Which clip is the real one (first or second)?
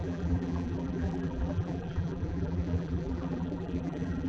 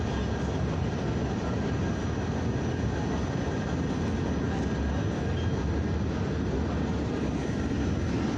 second